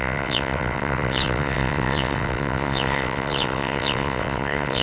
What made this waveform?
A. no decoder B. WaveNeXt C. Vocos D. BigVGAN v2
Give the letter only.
B